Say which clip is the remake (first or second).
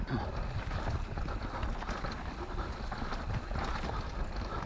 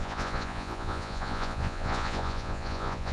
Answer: second